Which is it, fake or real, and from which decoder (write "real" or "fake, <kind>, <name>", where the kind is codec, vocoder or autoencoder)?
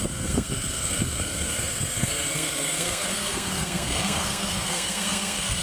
fake, codec, SNAC